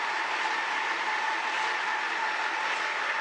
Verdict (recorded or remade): recorded